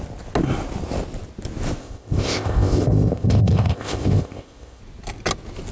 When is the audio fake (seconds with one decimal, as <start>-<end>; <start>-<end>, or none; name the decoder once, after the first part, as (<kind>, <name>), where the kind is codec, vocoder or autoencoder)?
1.8-4.8 (codec, ZipCodec)